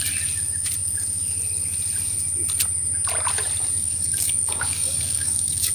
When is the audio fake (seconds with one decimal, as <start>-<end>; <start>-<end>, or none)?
3.8-5.7